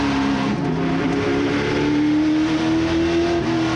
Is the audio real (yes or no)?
yes